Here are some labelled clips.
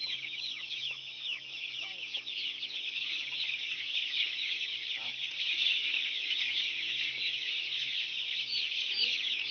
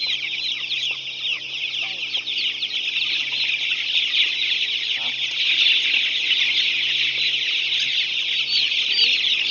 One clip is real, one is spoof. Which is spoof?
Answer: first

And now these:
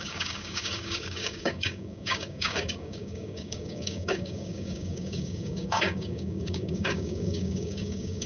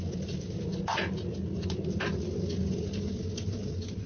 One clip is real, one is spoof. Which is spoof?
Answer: first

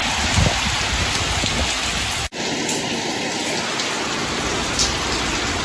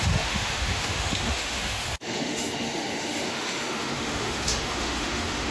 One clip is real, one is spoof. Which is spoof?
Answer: second